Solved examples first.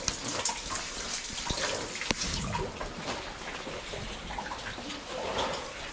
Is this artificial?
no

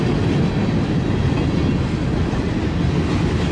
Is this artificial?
no